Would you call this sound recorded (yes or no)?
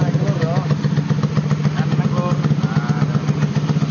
yes